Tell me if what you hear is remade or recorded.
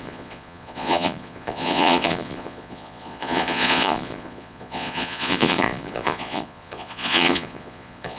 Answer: remade